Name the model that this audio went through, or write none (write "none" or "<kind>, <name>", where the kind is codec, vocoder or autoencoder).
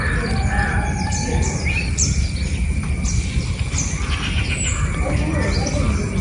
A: none